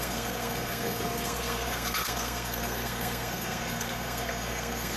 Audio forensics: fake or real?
fake